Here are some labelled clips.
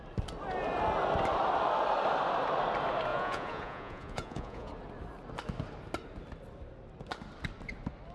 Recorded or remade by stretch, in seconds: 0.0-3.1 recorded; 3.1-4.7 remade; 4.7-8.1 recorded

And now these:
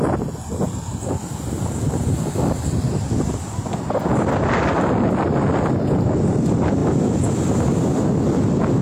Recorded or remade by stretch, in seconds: 0.0-8.8 recorded

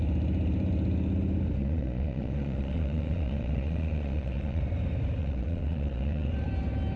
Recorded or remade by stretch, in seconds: 0.0-1.6 recorded; 1.6-4.6 remade; 4.6-5.2 recorded; 5.2-6.3 remade; 6.3-7.0 recorded

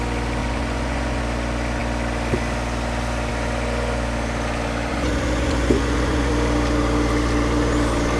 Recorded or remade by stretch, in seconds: 0.0-0.4 recorded; 0.4-1.2 remade; 1.2-4.9 recorded; 4.9-6.3 remade; 6.3-8.2 recorded

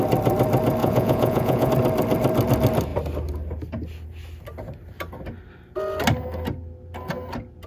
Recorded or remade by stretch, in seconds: 0.0-0.8 recorded; 0.8-1.7 remade; 1.7-7.7 recorded

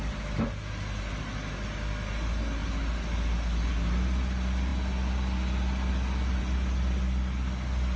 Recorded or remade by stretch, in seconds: 0.0-8.0 recorded